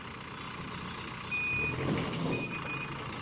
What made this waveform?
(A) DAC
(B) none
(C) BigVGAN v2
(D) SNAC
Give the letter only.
B